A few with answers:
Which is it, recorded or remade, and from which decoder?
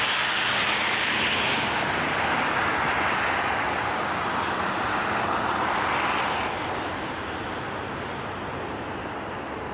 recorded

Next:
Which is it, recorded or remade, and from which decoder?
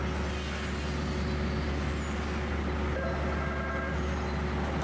recorded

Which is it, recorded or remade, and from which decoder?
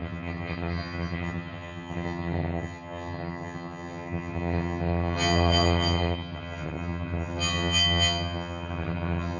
remade, vocoder, HiFi-GAN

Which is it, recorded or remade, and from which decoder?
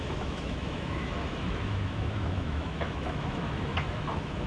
remade, autoencoder, DAC-VAE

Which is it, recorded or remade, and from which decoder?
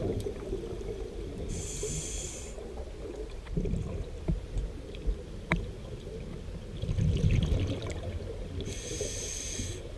recorded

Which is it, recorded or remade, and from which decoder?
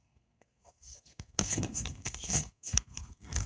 remade, codec, SNAC